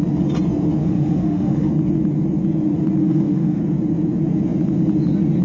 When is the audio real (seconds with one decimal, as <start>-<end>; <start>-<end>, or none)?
0.0-0.8; 1.7-3.0; 3.6-5.4